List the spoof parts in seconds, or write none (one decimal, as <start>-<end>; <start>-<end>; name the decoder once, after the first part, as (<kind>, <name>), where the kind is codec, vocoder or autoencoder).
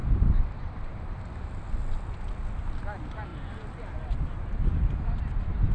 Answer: none